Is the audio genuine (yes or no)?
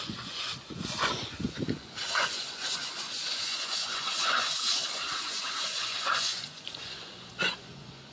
no